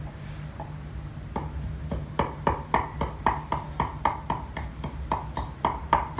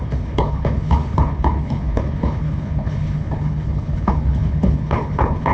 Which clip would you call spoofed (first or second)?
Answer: second